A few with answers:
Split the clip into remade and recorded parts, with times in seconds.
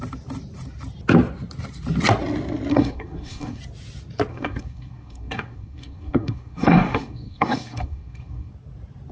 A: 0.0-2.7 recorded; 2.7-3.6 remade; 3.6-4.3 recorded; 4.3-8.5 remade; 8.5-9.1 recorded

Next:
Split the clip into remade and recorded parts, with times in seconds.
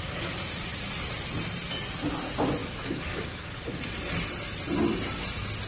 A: 0.0-2.6 recorded; 2.6-3.5 remade; 3.5-5.7 recorded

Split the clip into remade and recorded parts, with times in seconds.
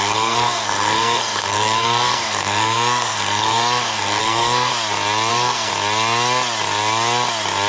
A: 0.0-4.7 remade; 4.7-5.3 recorded; 5.3-5.7 remade; 5.7-7.7 recorded